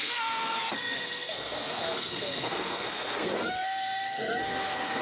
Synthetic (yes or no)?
yes